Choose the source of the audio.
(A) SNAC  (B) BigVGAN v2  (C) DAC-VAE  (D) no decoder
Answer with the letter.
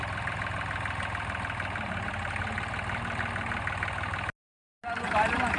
D